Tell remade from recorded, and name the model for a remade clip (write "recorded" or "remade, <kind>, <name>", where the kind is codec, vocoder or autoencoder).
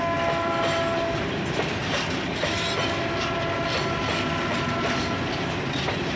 recorded